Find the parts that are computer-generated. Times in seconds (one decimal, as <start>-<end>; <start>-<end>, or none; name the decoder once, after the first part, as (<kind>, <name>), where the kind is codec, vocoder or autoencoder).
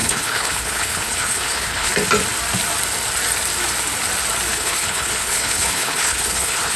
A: 0.0-1.9 (codec, HILCodec); 4.5-6.8